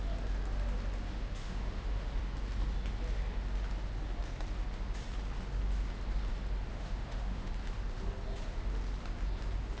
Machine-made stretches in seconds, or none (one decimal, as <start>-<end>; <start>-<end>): 1.4-2.2; 6.7-7.5

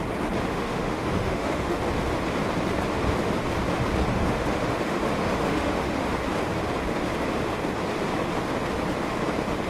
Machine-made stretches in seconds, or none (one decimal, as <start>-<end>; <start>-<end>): 0.5-1.8; 4.1-6.0

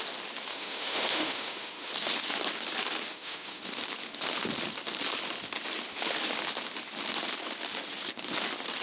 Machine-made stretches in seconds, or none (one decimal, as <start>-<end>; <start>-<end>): 0.5-1.9; 3.1-3.6

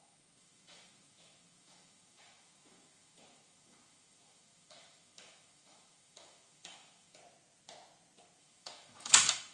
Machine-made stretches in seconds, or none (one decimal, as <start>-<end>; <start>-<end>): 0.0-7.2; 8.4-9.5

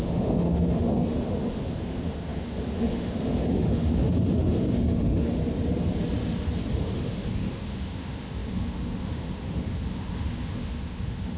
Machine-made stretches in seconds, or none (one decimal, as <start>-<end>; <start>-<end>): 0.0-5.4; 6.8-11.4

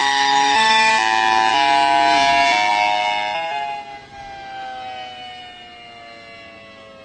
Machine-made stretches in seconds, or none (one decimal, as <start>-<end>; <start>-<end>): 0.0-0.9